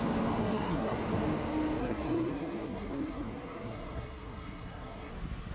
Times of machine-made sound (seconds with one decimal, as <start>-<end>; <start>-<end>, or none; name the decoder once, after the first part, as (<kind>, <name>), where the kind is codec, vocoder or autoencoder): 0.4-1.0 (codec, SNAC); 1.8-5.1